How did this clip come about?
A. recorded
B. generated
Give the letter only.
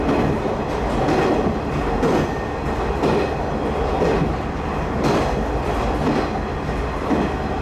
A